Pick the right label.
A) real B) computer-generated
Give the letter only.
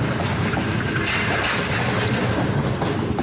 A